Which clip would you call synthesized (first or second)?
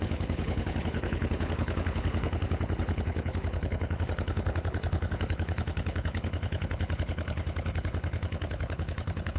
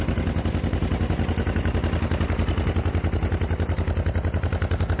first